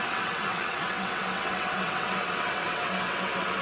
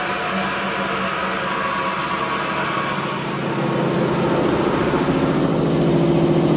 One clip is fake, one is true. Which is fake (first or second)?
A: first